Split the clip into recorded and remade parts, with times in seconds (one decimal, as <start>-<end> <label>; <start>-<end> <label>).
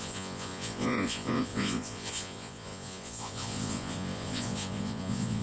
0.0-5.4 remade